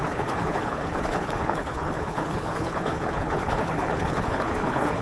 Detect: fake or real fake